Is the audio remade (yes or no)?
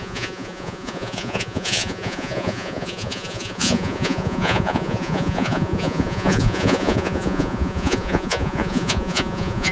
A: yes